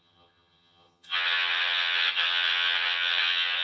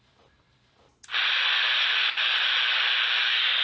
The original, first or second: second